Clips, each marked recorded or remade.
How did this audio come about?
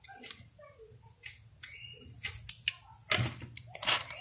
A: recorded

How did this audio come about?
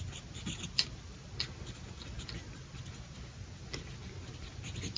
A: recorded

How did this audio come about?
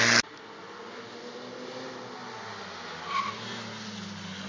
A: recorded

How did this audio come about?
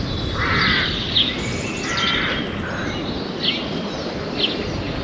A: recorded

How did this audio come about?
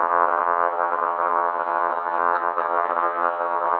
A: remade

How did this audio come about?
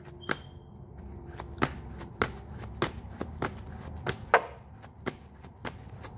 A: recorded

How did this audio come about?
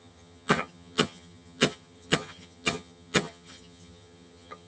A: remade